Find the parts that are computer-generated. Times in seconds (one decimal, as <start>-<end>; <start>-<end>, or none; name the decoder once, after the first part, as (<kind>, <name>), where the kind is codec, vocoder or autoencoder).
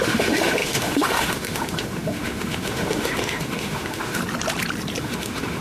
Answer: 0.0-4.2 (autoencoder, DAC-VAE); 5.0-5.6